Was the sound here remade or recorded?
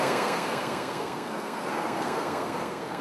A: remade